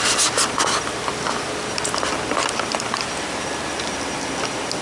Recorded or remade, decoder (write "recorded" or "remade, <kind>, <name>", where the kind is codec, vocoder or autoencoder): recorded